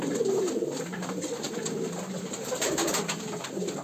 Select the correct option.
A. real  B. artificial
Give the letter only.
B